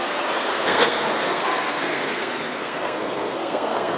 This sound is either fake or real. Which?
fake